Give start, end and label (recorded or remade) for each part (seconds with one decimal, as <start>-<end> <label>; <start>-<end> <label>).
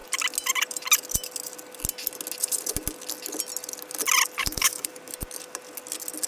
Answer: 0.0-4.4 recorded; 4.4-4.9 remade; 4.9-6.3 recorded